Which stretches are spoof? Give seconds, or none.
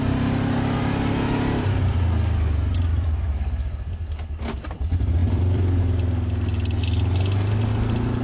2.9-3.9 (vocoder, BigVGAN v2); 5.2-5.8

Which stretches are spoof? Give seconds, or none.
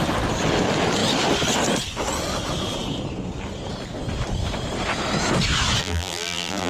5.8-6.7 (vocoder, BigVGAN v2)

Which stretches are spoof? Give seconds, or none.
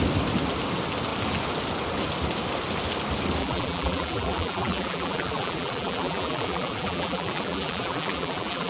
3.4-8.7 (vocoder, BigVGAN v2)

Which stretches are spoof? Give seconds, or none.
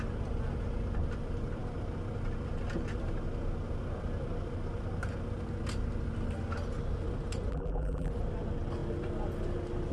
7.5-8.1 (vocoder, BigVGAN v2)